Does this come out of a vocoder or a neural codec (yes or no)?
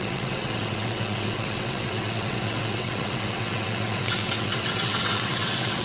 yes